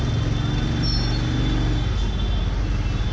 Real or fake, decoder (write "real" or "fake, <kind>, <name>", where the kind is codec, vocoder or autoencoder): real